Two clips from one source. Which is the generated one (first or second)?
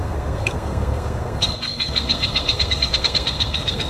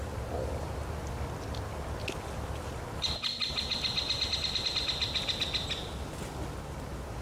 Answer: first